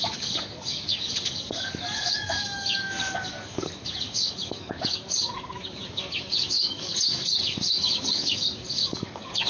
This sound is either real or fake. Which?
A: fake